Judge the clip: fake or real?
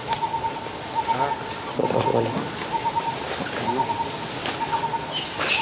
real